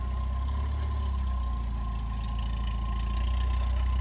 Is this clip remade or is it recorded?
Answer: recorded